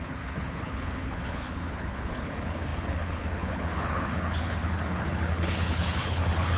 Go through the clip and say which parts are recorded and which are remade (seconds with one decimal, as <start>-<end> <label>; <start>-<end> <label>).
0.0-6.6 remade